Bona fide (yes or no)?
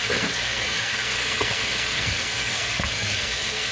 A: no